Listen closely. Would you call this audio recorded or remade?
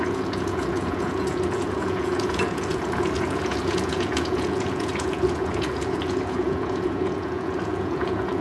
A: remade